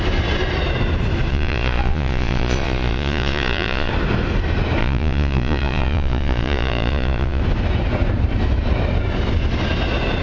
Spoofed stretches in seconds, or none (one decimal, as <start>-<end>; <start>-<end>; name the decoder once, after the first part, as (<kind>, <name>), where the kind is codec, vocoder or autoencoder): 1.3-3.9 (vocoder, Vocos); 4.8-7.4